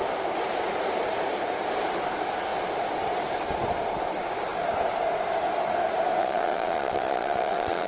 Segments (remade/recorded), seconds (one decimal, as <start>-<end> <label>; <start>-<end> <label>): 0.0-6.2 recorded; 6.2-7.9 remade